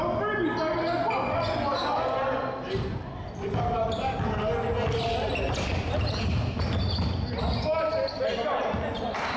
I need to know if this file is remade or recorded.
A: recorded